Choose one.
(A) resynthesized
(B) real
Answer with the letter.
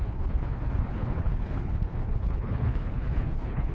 A